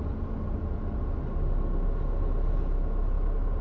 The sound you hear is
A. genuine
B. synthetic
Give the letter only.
A